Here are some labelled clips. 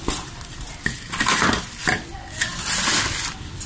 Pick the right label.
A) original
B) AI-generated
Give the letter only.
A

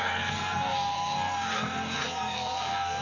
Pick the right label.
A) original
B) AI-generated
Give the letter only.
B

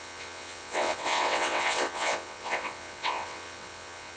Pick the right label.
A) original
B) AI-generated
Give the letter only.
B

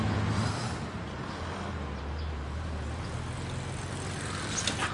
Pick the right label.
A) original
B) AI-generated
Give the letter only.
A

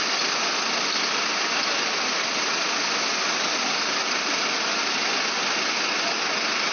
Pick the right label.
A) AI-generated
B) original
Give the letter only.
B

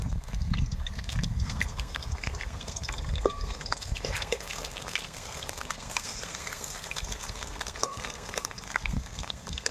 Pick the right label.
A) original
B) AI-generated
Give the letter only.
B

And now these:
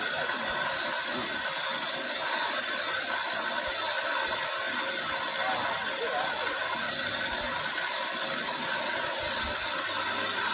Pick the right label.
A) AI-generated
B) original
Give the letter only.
B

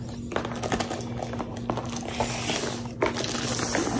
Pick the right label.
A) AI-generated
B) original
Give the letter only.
B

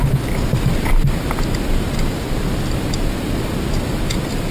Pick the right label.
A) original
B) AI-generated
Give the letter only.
A